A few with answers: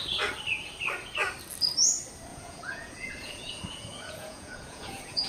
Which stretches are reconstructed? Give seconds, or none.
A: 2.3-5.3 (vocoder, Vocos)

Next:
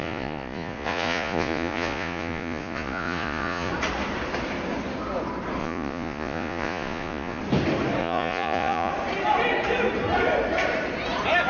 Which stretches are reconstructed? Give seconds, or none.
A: 0.0-3.7 (vocoder, Vocos); 5.6-7.4; 8.0-8.9

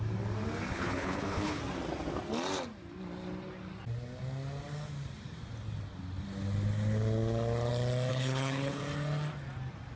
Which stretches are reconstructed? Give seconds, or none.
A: 0.7-1.6 (codec, HILCodec); 8.1-8.8

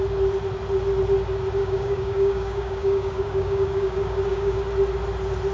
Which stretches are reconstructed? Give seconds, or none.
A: 1.6-4.6 (codec, DAC)

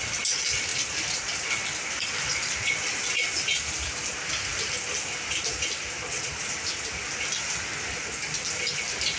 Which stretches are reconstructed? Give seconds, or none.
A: none